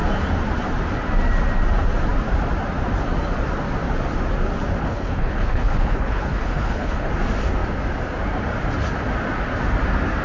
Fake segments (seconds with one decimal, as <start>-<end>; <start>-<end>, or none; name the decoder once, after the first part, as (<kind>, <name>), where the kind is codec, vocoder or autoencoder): 4.8-7.1 (codec, HILCodec)